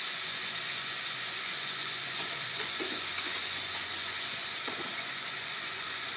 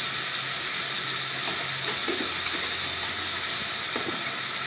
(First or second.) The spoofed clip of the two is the first